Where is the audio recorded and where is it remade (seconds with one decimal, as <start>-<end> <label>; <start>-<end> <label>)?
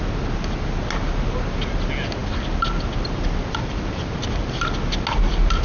0.0-5.6 recorded